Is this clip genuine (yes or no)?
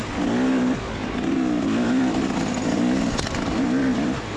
yes